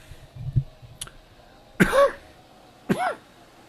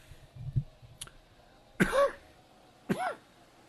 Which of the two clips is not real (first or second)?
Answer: second